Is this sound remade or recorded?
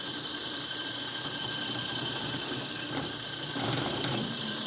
remade